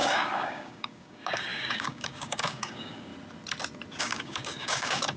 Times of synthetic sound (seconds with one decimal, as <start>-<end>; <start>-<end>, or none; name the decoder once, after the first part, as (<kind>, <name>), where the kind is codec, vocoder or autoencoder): 0.0-3.1 (codec, DAC); 4.0-5.2